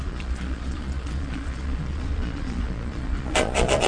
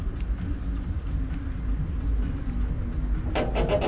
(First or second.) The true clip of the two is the second